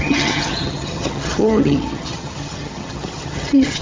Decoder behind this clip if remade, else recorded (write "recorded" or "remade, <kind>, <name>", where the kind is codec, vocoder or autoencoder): remade, vocoder, HiFi-GAN